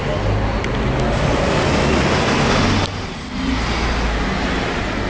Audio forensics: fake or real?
real